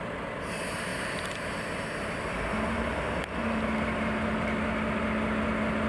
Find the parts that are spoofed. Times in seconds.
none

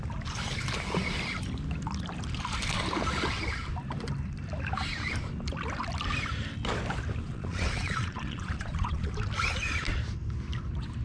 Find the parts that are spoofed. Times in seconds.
7.2-9.1 (vocoder, Vocos)

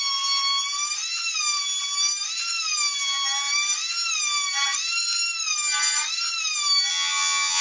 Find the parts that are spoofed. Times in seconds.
6.9-7.6 (vocoder, HiFi-GAN)

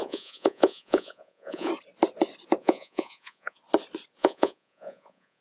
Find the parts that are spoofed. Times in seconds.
0.0-1.7 (vocoder, Vocos); 2.6-3.6; 4.2-5.4

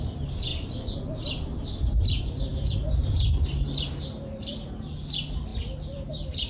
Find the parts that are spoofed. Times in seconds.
none

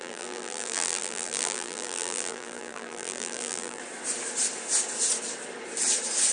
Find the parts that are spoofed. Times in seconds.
0.0-3.8 (vocoder, BigVGAN v2)

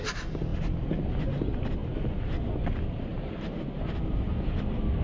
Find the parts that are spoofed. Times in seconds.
3.1-4.3 (vocoder, BigVGAN v2)

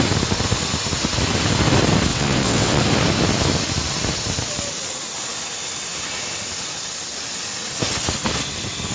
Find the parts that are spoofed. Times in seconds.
2.1-2.8 (vocoder, WaveNeXt)